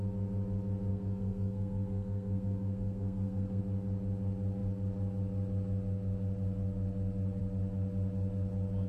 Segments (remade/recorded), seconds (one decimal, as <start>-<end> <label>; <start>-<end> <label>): 0.0-0.9 recorded; 0.9-3.6 remade; 3.6-8.9 recorded